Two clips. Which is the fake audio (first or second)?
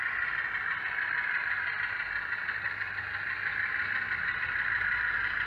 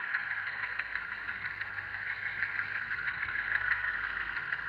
second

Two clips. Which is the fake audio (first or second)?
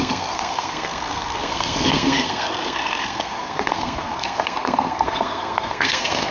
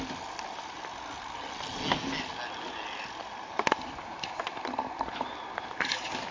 first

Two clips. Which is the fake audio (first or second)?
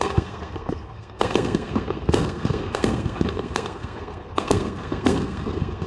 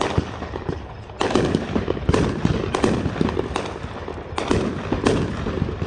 first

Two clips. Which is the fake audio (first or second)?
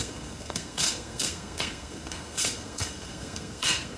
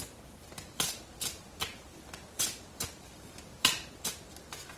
first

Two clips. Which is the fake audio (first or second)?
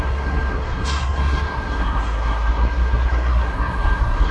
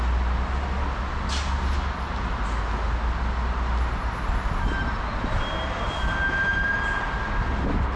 first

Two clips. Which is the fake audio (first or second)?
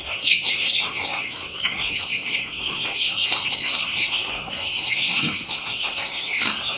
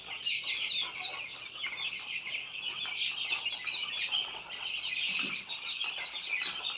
first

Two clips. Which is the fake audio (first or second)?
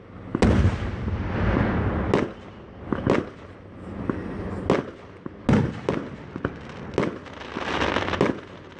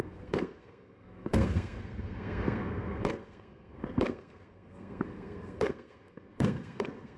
second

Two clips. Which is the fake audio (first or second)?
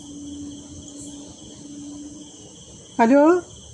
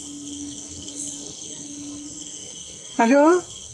second